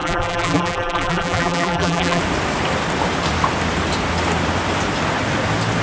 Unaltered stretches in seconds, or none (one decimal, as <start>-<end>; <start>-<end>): 2.2-5.8